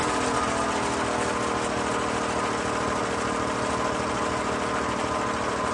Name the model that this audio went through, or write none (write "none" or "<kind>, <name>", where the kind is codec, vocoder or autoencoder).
none